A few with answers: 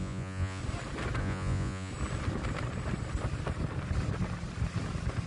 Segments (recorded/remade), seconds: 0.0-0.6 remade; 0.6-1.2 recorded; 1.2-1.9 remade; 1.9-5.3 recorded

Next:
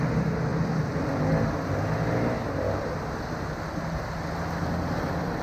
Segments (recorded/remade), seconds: 0.0-5.4 recorded